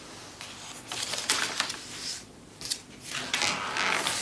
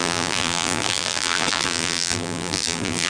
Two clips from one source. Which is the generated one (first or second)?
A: second